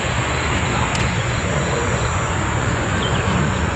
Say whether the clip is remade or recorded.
remade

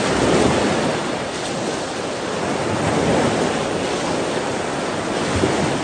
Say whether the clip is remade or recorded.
recorded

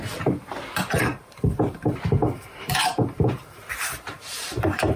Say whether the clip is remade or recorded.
remade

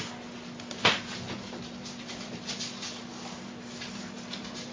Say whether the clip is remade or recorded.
recorded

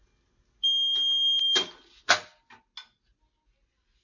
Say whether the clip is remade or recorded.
recorded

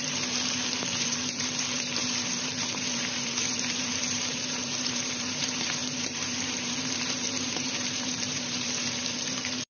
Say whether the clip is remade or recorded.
remade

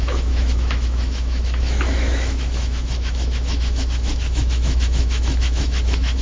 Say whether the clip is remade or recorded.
remade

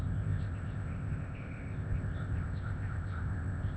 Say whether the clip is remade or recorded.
remade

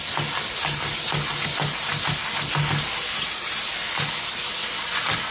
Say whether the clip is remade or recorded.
recorded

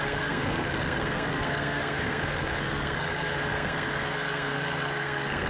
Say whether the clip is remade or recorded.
remade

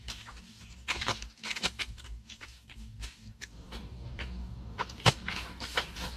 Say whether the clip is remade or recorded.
remade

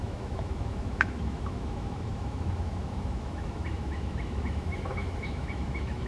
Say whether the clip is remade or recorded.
remade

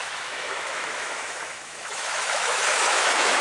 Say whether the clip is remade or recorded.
remade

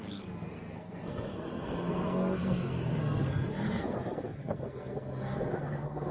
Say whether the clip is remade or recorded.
remade